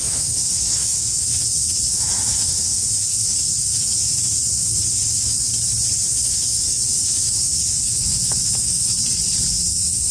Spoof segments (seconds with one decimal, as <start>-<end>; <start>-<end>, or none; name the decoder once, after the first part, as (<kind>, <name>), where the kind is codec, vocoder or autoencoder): 0.0-5.5 (autoencoder, DAC-VAE); 6.1-8.9; 9.5-10.1